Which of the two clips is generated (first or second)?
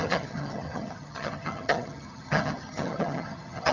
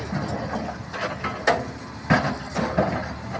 first